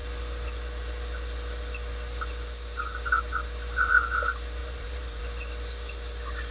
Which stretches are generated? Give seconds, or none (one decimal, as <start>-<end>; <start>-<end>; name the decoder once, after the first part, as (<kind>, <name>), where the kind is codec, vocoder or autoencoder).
4.6-5.2 (vocoder, BigVGAN v2)